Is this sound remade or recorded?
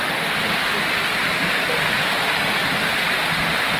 recorded